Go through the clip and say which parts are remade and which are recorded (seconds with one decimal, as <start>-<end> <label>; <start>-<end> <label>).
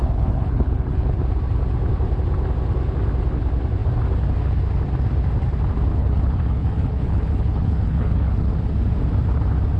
0.0-1.2 remade; 1.2-6.0 recorded; 6.0-8.5 remade; 8.5-9.8 recorded